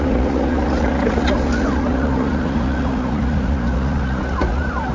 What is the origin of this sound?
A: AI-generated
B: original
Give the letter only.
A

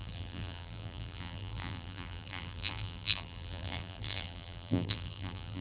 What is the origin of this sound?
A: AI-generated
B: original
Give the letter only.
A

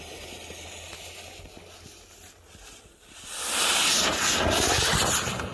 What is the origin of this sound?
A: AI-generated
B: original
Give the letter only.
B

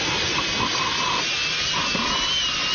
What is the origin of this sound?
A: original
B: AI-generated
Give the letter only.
A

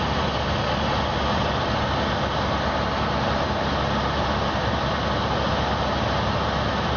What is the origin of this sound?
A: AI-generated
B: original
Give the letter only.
B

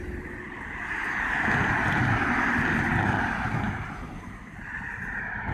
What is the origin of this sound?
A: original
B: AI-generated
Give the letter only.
A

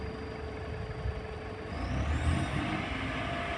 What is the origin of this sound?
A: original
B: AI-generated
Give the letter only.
A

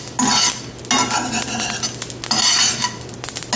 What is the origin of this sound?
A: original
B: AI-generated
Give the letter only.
A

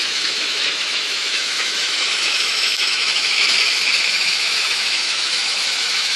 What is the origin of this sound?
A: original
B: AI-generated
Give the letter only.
B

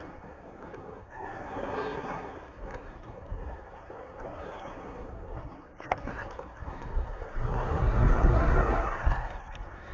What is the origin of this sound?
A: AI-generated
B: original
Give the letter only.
A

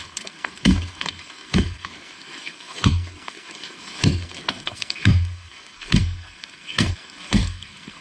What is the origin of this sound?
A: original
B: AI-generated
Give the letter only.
B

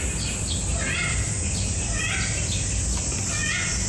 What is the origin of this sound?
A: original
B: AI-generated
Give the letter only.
A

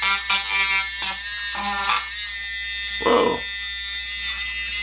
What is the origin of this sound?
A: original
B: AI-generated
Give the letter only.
A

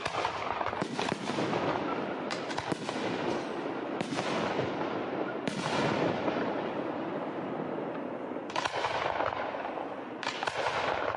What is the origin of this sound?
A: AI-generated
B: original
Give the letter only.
B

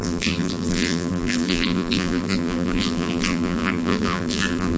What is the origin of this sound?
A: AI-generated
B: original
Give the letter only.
A